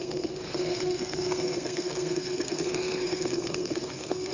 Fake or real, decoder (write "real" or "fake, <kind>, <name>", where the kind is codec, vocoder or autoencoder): fake, codec, SNAC